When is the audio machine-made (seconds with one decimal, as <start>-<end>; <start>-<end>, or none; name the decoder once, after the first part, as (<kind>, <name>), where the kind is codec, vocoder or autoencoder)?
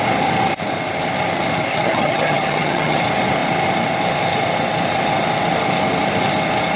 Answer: 1.7-3.0 (vocoder, HiFi-GAN)